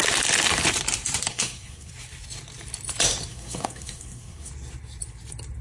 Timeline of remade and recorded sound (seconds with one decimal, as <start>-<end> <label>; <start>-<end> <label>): 0.0-1.3 recorded; 1.3-1.9 remade; 1.9-3.3 recorded; 3.3-4.5 remade; 4.5-5.6 recorded